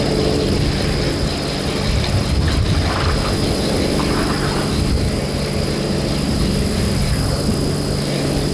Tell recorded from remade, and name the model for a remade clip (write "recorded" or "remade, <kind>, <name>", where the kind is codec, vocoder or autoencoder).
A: recorded